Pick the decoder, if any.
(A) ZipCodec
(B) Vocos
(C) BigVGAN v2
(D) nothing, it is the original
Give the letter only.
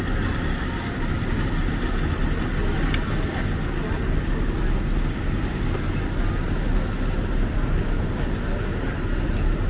D